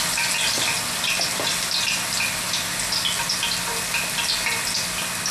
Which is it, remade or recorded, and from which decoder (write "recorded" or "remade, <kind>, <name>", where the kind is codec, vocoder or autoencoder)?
recorded